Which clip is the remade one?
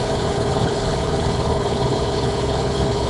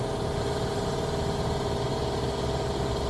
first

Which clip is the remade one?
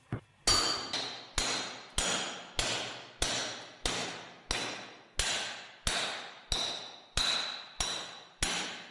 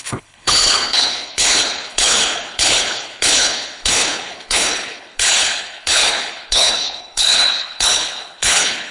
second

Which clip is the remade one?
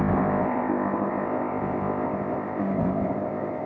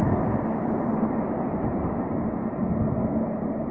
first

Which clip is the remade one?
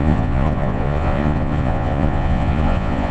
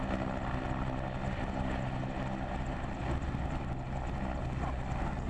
first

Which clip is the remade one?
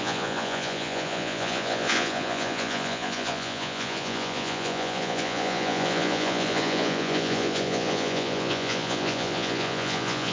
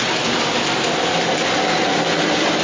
first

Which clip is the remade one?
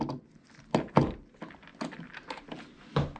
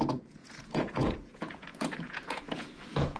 second